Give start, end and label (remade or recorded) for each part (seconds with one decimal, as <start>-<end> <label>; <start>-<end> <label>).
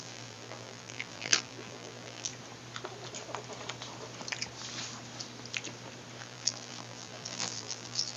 0.0-2.3 remade; 2.3-6.2 recorded; 6.2-8.2 remade